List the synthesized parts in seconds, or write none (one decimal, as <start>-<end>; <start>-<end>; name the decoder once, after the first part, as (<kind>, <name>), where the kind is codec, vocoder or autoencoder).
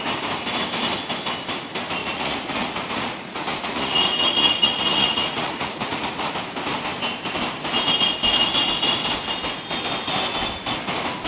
2.0-6.3 (vocoder, Vocos)